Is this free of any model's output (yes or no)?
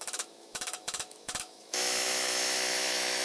no